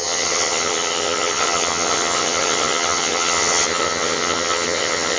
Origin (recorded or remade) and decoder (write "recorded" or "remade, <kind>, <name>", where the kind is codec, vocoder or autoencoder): remade, vocoder, HiFi-GAN